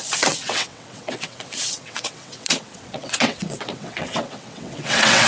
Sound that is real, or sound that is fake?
fake